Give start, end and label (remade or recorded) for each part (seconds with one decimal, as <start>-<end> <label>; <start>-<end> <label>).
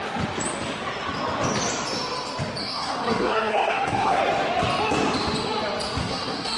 0.0-2.6 recorded; 2.6-4.2 remade; 4.2-6.0 recorded; 6.0-6.6 remade